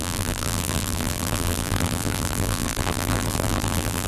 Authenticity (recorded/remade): remade